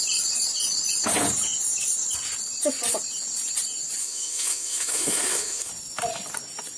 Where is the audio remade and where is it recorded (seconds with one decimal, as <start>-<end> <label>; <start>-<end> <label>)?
0.0-4.0 recorded; 4.0-5.7 remade; 5.7-6.8 recorded